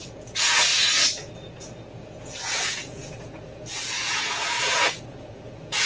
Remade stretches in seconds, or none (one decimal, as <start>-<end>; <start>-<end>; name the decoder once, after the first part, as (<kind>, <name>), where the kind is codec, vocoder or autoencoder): 0.0-5.9 (vocoder, Vocos)